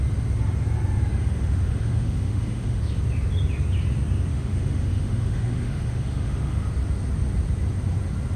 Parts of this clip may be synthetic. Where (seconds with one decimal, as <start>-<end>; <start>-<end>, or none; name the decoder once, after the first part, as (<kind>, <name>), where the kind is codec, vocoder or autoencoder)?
1.2-2.8 (autoencoder, DAC-VAE); 4.3-6.7